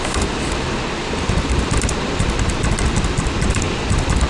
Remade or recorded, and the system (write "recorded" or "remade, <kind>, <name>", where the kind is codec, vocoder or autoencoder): remade, vocoder, BigVGAN v2